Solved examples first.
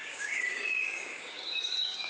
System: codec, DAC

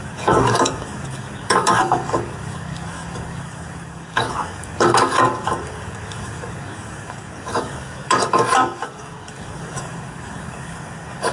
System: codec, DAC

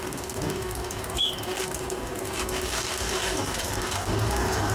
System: codec, DAC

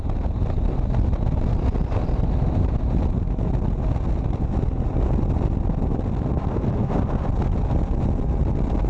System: none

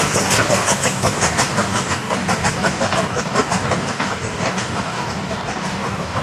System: codec, DAC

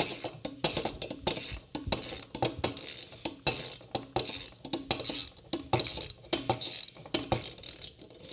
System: none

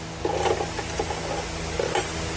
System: none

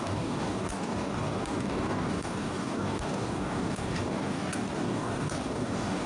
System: codec, DAC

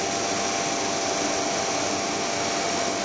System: none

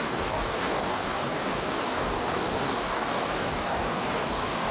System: codec, DAC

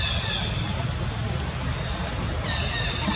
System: none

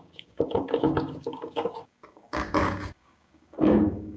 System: codec, DAC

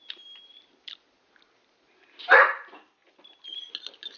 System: none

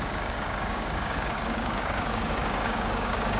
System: codec, DAC